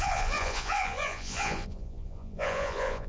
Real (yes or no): no